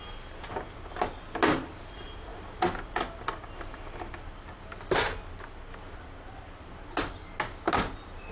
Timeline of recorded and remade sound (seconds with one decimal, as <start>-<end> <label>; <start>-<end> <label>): 0.0-8.3 recorded